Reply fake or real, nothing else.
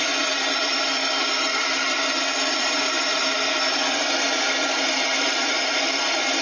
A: fake